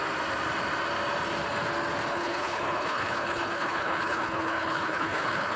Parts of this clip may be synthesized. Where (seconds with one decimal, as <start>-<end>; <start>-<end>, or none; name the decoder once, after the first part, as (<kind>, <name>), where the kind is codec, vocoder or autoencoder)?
2.1-5.6 (codec, HILCodec)